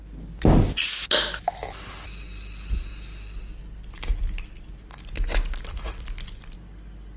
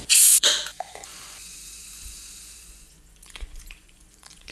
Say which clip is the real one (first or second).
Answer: first